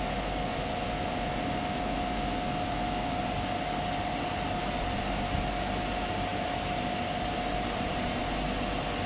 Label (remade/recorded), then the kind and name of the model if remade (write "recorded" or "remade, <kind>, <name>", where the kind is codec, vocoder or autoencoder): recorded